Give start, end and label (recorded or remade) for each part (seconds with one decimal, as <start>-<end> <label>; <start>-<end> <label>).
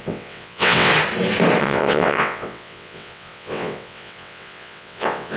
0.0-0.9 remade; 0.9-1.6 recorded; 1.6-5.4 remade